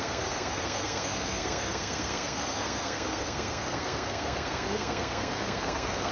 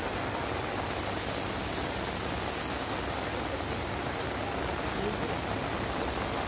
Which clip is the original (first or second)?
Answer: second